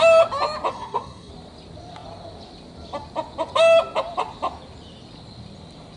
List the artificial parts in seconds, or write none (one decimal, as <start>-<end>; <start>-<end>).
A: 0.7-1.3